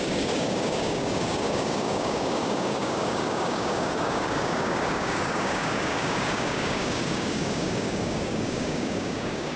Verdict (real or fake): fake